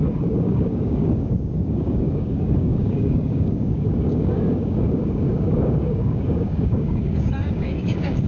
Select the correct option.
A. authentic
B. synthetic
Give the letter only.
B